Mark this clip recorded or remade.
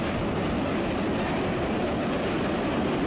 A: recorded